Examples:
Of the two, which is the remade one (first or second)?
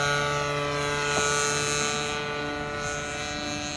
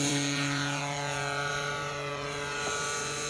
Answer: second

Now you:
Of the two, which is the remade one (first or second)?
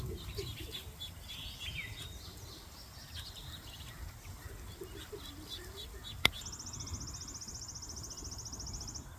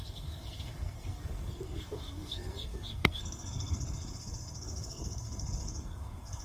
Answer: second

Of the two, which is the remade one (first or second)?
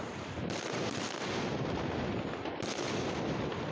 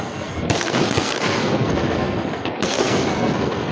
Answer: second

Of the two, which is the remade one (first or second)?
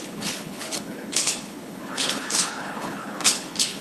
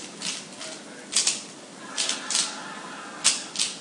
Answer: first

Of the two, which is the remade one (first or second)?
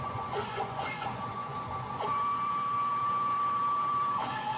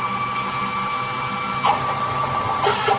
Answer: first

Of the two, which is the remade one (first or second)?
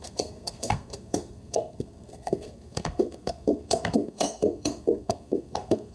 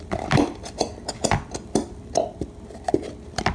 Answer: first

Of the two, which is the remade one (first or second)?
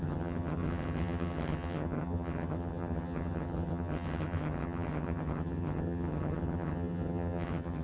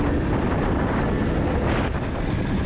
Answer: first